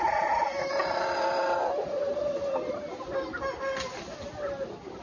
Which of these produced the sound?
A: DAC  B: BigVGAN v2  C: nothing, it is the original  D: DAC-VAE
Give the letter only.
C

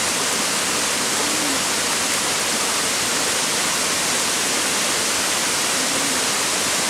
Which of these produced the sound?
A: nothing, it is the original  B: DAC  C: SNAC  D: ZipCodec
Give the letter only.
A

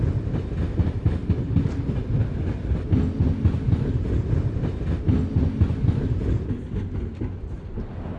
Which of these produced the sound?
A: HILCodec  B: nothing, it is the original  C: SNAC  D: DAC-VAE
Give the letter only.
B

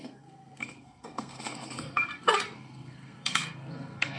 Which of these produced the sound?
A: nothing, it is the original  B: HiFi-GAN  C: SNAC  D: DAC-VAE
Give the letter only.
C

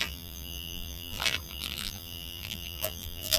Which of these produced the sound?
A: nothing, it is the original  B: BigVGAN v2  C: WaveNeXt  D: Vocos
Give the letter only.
B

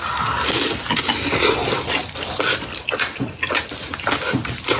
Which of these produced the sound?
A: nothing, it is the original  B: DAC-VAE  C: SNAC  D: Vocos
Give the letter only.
A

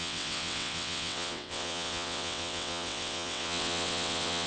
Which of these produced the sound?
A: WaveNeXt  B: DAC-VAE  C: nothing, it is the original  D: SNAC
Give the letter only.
A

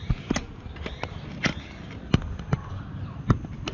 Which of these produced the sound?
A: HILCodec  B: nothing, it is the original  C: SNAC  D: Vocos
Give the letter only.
B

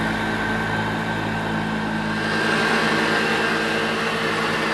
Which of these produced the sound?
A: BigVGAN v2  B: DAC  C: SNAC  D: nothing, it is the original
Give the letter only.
D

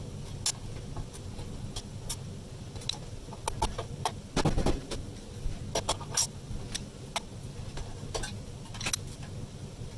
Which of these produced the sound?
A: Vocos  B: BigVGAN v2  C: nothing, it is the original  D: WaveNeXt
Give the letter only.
C